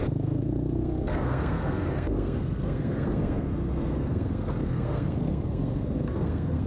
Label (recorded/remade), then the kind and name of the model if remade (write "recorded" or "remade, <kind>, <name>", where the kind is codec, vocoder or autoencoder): remade, codec, SNAC